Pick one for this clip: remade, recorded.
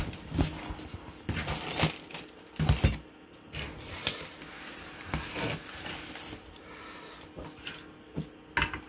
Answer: recorded